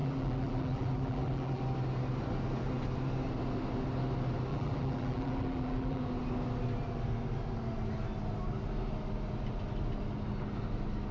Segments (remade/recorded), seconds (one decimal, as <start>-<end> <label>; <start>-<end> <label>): 0.0-1.6 remade; 1.6-4.5 recorded; 4.5-6.0 remade; 6.0-11.1 recorded